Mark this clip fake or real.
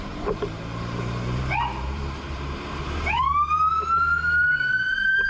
fake